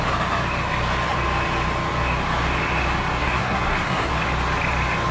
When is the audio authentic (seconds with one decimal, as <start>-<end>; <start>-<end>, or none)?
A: 0.0-3.2; 4.1-5.1